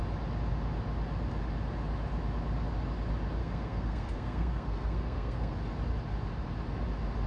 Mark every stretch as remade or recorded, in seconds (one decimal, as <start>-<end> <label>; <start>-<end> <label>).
0.0-3.4 recorded; 3.4-5.5 remade; 5.5-7.3 recorded

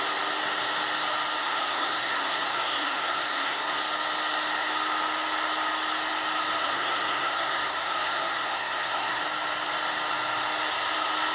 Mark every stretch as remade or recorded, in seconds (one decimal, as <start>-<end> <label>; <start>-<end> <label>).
0.0-1.4 recorded; 1.4-3.8 remade; 3.8-6.6 recorded; 6.6-9.2 remade; 9.2-11.3 recorded

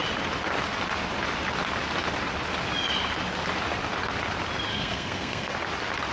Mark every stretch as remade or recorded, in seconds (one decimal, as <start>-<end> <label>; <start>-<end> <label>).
0.0-4.7 recorded; 4.7-5.5 remade; 5.5-6.1 recorded

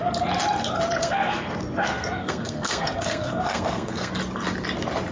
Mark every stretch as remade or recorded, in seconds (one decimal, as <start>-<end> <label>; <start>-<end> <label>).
0.0-1.0 recorded; 1.0-4.1 remade; 4.1-5.1 recorded

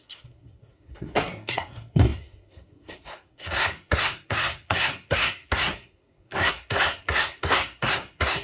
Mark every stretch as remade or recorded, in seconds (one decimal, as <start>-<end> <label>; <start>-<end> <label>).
0.0-8.4 remade

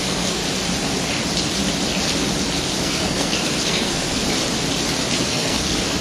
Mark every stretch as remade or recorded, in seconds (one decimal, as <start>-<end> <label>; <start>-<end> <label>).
0.0-0.4 remade; 0.4-2.8 recorded; 2.8-4.2 remade; 4.2-5.2 recorded; 5.2-6.0 remade

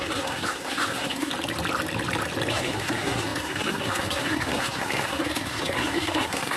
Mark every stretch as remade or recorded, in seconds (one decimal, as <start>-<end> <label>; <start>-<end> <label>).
0.0-1.3 remade; 1.3-2.5 recorded; 2.5-6.6 remade

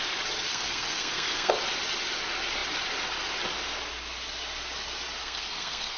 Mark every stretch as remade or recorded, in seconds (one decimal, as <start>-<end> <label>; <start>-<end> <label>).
0.0-0.5 recorded; 0.5-1.5 remade; 1.5-5.2 recorded; 5.2-6.0 remade